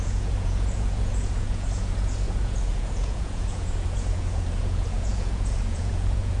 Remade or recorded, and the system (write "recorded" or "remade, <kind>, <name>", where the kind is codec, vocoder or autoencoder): remade, vocoder, Vocos